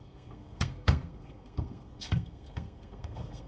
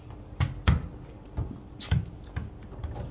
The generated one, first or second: first